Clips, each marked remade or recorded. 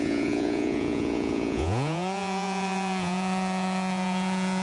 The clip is remade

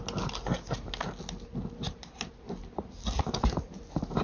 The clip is recorded